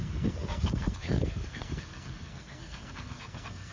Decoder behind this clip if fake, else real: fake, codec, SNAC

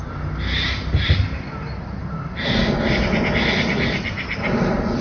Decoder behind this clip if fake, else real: real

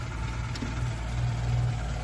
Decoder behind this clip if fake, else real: real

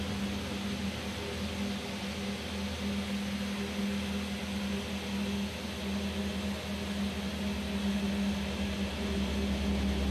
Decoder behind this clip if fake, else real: real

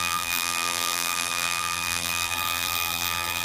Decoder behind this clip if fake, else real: fake, vocoder, BigVGAN v2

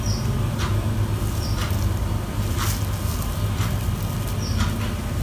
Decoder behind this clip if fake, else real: real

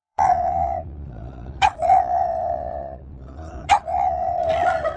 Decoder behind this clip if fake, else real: fake, vocoder, Vocos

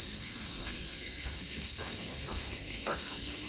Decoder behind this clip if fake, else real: fake, codec, SNAC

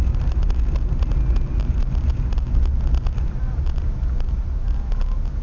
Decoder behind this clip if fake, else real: real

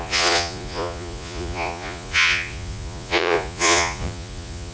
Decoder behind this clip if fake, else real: fake, vocoder, Vocos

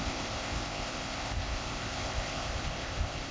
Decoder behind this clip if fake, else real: fake, codec, ZipCodec